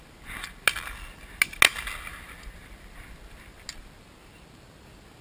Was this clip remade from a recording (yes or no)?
no